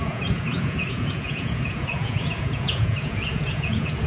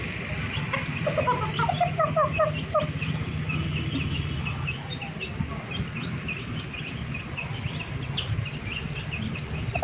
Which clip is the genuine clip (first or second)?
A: second